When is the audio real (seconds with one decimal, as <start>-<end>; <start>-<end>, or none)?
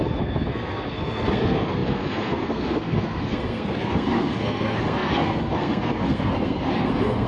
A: none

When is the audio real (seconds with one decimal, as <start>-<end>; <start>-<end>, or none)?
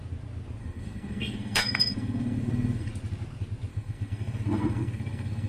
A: 0.0-0.6; 2.9-3.7